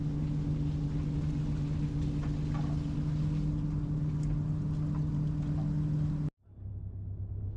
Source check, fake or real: real